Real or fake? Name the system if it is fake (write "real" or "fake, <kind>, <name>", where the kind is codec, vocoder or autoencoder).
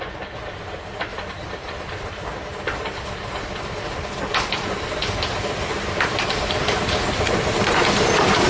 real